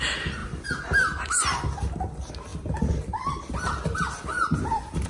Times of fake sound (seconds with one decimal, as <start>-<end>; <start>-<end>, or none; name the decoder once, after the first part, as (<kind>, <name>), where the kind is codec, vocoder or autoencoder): none